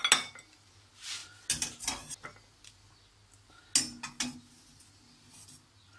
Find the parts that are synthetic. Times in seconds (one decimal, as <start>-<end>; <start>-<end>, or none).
none

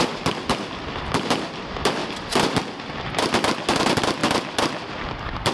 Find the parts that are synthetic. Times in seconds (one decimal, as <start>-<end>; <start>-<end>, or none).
none